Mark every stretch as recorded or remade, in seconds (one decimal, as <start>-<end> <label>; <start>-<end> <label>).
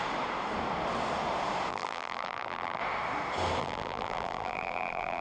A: 0.0-1.7 recorded; 1.7-2.8 remade; 2.8-3.6 recorded; 3.6-5.2 remade